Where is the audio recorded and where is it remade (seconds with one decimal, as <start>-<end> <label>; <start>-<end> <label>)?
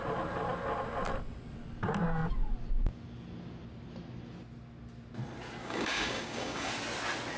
0.0-5.6 recorded; 5.6-6.7 remade; 6.7-7.4 recorded